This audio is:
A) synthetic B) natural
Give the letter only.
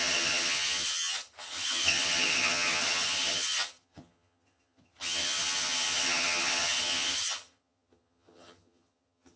A